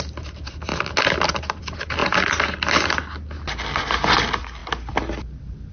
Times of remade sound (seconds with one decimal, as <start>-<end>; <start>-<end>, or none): none